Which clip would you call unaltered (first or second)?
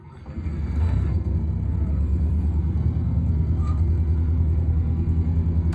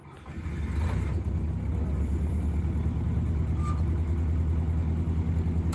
second